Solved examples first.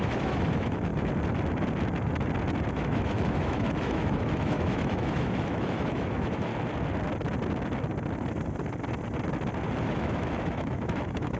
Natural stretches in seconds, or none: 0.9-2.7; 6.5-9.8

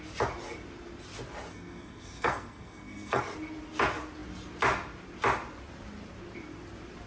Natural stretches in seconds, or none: 0.0-1.5; 3.2-7.1